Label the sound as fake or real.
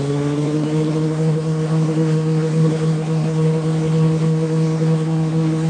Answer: fake